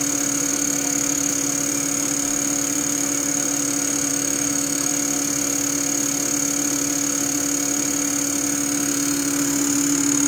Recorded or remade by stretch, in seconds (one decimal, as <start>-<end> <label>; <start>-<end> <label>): 0.0-0.5 recorded; 0.5-1.3 remade; 1.3-4.1 recorded; 4.1-4.9 remade; 4.9-10.3 recorded